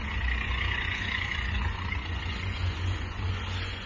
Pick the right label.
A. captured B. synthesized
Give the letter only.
B